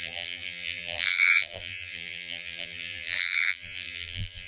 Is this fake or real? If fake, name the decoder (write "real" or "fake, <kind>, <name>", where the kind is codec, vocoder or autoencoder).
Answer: fake, vocoder, BigVGAN v2